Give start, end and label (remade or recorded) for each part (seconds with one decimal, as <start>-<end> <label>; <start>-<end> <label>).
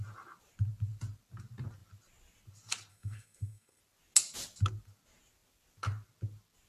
0.0-2.9 recorded; 2.9-3.8 remade; 3.8-6.7 recorded